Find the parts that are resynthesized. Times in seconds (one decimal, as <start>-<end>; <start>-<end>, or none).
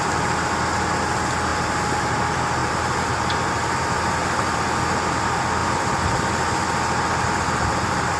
1.5-2.2; 2.6-4.0; 5.6-6.2